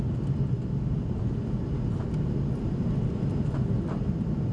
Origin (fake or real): real